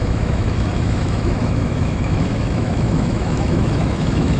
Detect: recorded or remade remade